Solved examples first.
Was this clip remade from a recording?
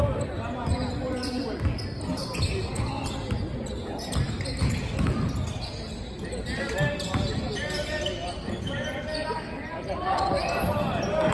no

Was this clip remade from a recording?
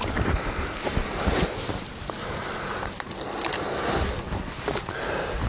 no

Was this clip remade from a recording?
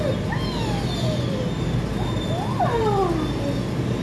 no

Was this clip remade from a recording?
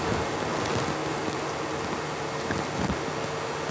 no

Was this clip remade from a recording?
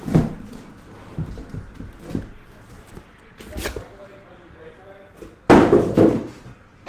no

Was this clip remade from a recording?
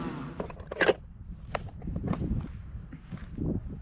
no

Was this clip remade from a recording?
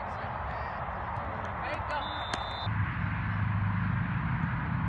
no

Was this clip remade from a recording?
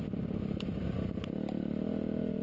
yes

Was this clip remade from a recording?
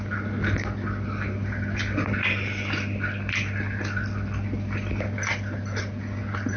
no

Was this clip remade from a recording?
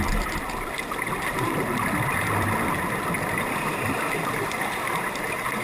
yes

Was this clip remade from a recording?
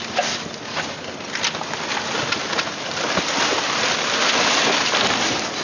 yes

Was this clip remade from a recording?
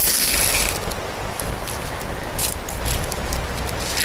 no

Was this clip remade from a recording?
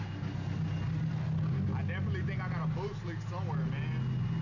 no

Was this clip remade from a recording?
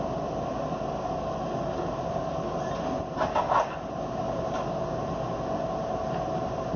no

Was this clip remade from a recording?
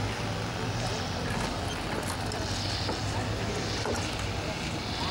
no